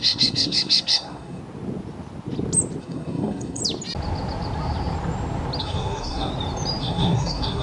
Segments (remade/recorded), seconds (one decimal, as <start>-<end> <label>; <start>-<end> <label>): 0.0-1.4 remade; 1.4-2.8 recorded; 2.8-3.6 remade; 3.6-5.6 recorded; 5.6-6.3 remade; 6.3-6.8 recorded; 6.8-7.6 remade